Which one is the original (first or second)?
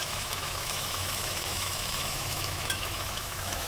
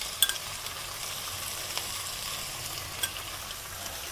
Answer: second